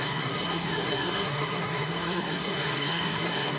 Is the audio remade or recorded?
remade